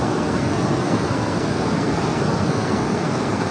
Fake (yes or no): yes